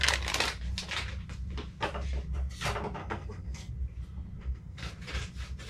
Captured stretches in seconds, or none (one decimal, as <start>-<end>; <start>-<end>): 0.0-3.0; 3.7-4.4; 4.9-5.7